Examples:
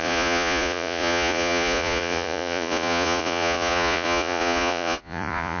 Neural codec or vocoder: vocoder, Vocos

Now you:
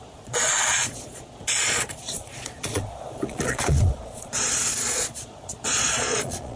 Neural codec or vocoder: vocoder, Vocos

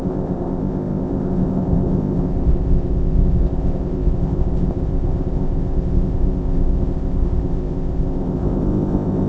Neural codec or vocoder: codec, ZipCodec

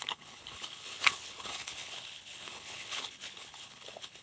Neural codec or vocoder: codec, HILCodec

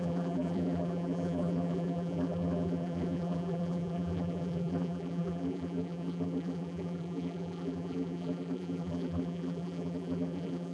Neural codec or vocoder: vocoder, BigVGAN v2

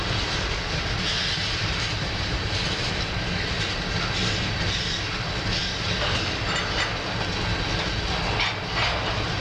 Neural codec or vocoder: none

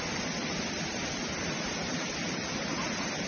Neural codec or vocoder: none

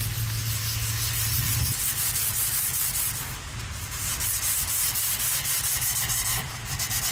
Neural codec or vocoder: none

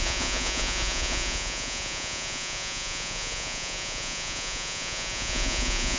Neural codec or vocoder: vocoder, Vocos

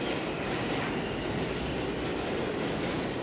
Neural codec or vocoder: none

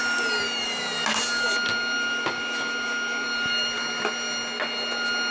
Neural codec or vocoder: none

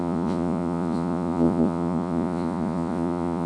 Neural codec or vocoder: vocoder, Vocos